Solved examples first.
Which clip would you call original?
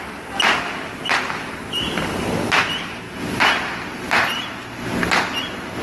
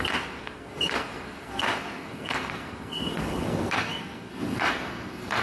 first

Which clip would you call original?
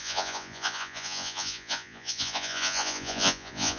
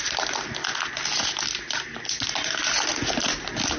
second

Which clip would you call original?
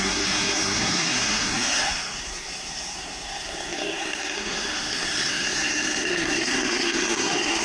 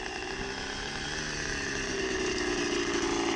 second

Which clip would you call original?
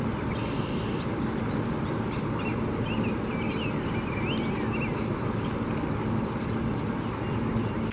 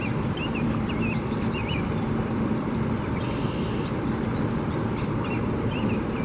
first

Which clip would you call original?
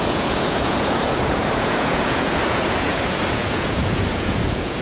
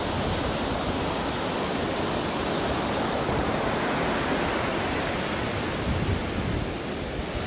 second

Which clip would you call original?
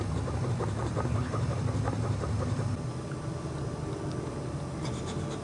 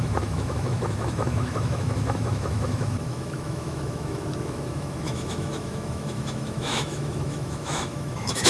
first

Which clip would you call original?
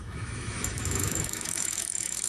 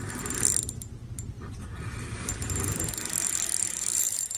second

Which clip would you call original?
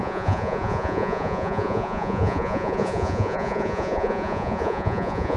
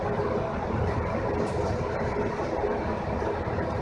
second